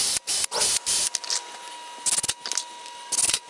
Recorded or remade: recorded